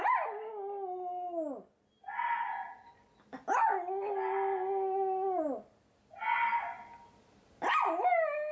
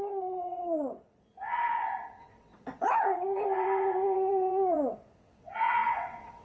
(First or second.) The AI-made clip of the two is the second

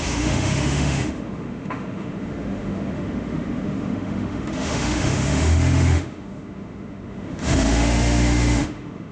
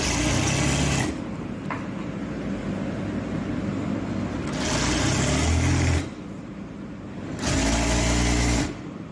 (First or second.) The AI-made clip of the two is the first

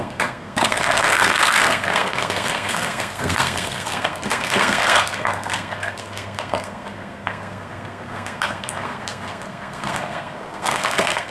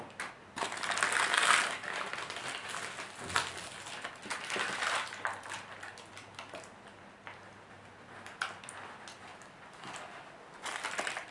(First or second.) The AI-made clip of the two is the first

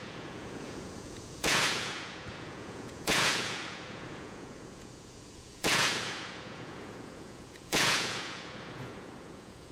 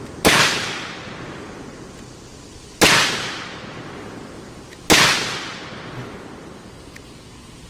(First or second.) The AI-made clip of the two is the first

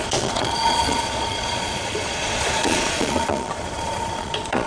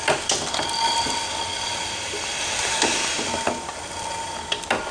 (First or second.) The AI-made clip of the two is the first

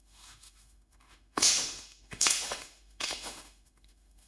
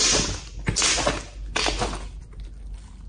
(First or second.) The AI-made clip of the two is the first